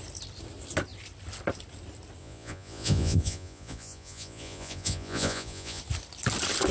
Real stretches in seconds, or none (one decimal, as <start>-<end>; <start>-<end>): 0.0-2.2; 5.8-6.7

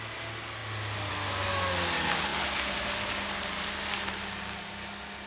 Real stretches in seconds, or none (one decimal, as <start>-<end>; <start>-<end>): 0.0-5.3

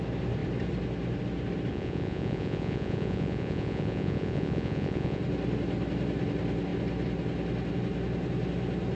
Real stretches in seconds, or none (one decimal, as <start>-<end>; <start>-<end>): 0.0-1.7; 5.2-8.9

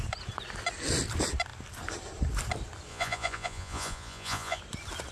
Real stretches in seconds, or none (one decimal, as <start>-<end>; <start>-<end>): 0.0-2.9; 4.6-5.1

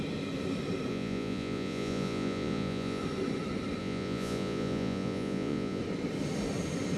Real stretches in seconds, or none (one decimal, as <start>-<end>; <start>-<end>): 0.0-0.9; 3.0-3.8; 5.8-7.0

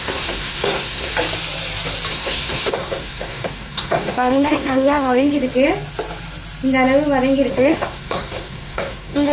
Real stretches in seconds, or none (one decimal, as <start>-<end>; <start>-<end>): 1.1-2.1; 5.4-7.5

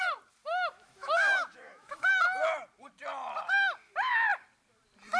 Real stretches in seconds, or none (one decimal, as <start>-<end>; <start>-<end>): 0.0-0.4; 2.1-5.2